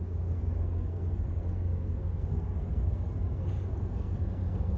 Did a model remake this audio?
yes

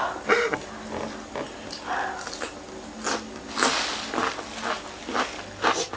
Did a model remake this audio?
no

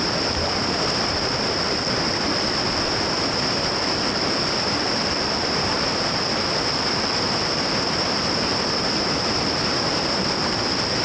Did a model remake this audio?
yes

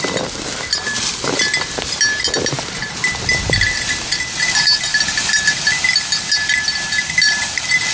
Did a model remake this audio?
no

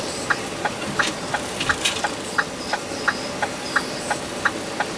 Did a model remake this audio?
no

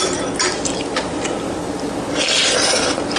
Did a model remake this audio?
yes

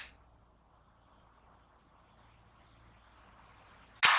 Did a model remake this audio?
no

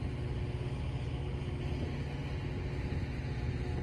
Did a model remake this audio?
no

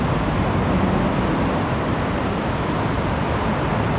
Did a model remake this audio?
no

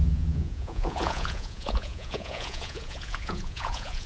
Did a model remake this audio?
yes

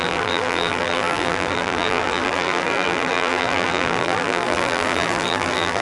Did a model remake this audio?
yes